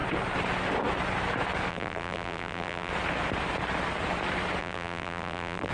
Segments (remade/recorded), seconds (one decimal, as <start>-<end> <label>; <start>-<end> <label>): 0.0-1.7 recorded; 1.7-2.9 remade; 2.9-4.6 recorded; 4.6-5.7 remade